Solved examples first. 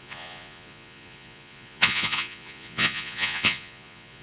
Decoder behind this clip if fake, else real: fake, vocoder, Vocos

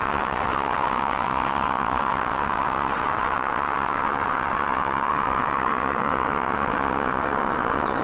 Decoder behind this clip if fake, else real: fake, vocoder, WaveNeXt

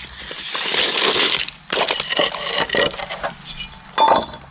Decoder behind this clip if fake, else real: real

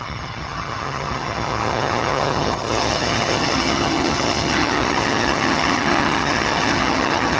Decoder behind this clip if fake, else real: fake, vocoder, HiFi-GAN